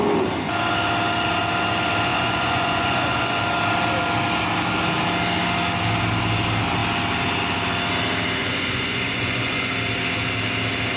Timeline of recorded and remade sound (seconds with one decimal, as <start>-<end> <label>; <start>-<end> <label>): 0.0-2.1 recorded; 2.1-3.4 remade; 3.4-8.4 recorded; 8.4-9.7 remade; 9.7-11.0 recorded